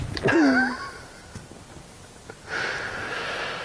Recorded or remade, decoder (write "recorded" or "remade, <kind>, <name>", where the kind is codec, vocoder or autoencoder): recorded